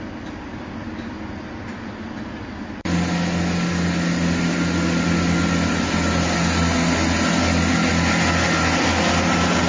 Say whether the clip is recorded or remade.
recorded